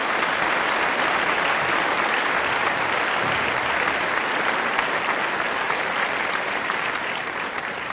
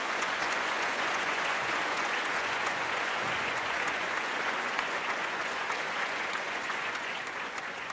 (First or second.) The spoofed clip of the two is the second